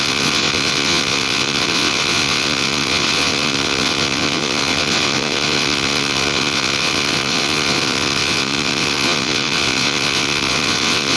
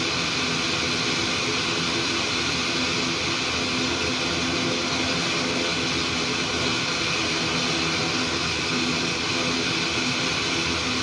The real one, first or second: second